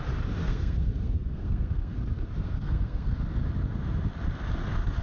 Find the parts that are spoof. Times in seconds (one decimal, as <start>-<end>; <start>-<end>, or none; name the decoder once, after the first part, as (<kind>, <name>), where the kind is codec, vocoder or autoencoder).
0.4-3.1 (codec, SNAC)